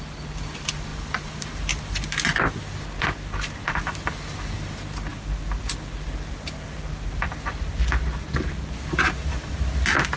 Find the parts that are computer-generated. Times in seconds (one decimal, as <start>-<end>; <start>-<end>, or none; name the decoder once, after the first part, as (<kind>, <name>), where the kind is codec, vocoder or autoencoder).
none